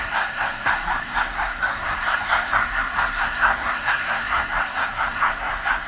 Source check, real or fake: fake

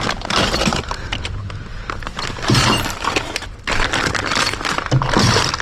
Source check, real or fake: real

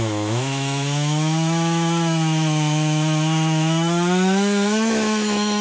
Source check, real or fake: fake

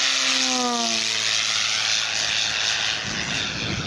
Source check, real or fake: real